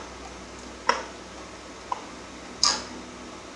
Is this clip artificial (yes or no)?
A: no